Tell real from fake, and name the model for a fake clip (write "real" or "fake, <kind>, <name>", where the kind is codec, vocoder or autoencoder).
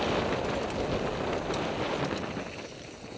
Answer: real